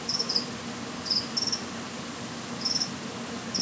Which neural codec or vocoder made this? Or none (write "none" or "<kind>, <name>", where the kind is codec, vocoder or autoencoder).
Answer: none